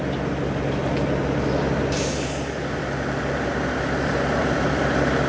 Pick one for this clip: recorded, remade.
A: recorded